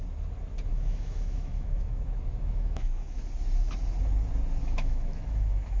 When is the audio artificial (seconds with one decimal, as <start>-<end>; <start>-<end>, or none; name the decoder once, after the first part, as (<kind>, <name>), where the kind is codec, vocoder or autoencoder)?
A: 0.7-3.3 (autoencoder, DAC-VAE); 4.6-5.8